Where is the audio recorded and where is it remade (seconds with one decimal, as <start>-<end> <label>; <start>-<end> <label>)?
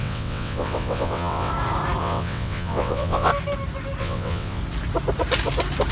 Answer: 0.0-1.5 remade; 1.5-2.0 recorded; 2.0-3.3 remade; 3.3-4.0 recorded; 4.0-4.6 remade; 4.6-5.9 recorded